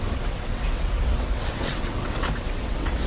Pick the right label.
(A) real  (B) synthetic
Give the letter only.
B